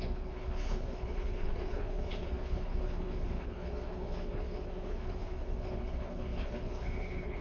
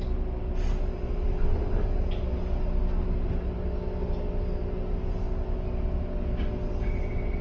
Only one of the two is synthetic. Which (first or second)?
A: first